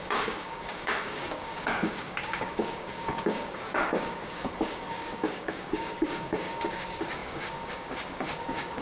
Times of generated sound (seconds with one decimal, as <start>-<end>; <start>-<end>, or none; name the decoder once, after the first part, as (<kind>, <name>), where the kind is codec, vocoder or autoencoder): 0.0-8.8 (codec, DAC)